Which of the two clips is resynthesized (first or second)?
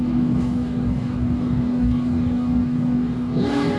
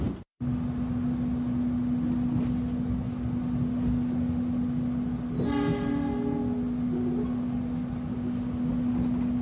first